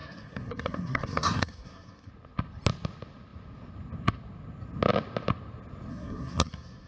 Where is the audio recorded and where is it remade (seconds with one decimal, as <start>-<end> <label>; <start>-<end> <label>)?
0.0-2.1 remade; 2.1-5.9 recorded; 5.9-6.9 remade